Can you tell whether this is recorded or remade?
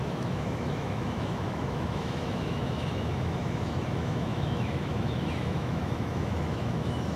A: remade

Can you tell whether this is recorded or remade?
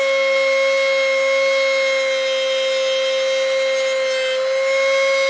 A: recorded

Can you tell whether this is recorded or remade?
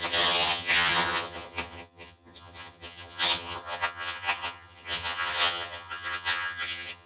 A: remade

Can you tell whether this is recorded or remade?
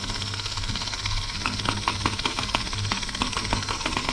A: remade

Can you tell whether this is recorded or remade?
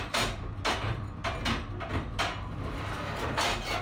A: recorded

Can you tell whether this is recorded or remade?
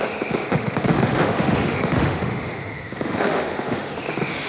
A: remade